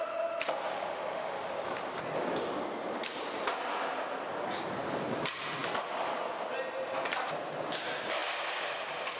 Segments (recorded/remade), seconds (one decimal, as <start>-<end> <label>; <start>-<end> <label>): 0.0-0.7 recorded; 0.7-1.5 remade; 1.5-9.2 recorded